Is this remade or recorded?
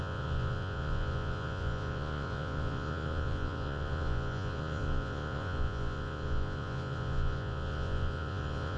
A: remade